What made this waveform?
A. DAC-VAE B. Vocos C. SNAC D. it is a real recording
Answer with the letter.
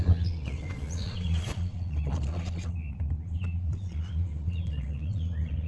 B